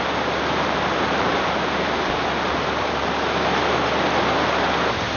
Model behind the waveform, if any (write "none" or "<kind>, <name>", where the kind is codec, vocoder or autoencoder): none